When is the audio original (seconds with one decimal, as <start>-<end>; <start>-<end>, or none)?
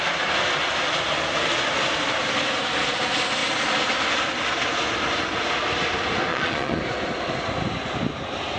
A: 0.0-6.3; 6.8-8.6